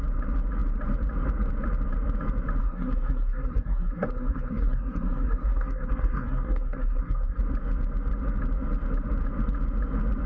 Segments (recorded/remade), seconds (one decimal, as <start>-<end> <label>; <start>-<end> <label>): 0.0-2.6 recorded; 2.6-7.4 remade; 7.4-10.3 recorded